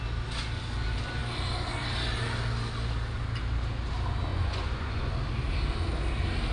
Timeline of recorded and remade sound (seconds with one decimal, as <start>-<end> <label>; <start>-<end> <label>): 0.0-4.3 recorded; 4.3-5.1 remade; 5.1-6.5 recorded